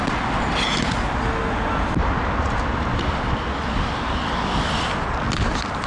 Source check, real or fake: real